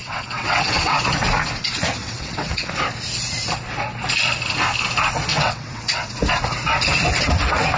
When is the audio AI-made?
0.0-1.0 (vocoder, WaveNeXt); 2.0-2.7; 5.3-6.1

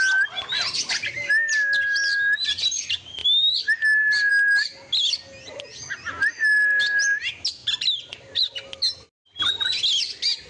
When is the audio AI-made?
none

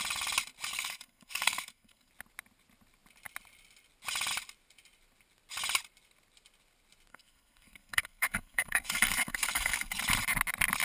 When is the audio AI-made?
0.7-2.1 (codec, SNAC); 7.1-10.0

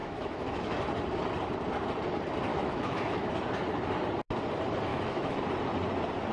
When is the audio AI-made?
0.0-0.8 (autoencoder, DAC-VAE); 2.5-3.3; 4.9-5.4

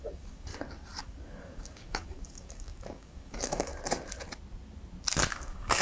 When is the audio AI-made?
0.0-0.5 (codec, DAC); 1.0-3.7; 5.3-5.8

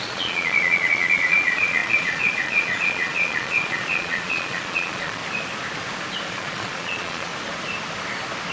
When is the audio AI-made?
0.0-5.2 (vocoder, Vocos); 6.3-7.3

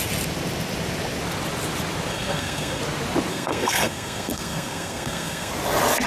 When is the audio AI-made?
2.1-2.8 (codec, SNAC); 3.3-5.5